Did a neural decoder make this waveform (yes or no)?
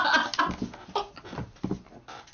no